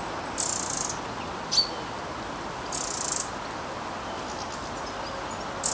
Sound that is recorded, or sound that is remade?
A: recorded